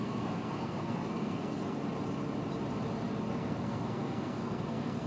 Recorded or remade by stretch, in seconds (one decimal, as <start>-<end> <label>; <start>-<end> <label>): 0.0-1.8 remade; 1.8-3.3 recorded; 3.3-5.1 remade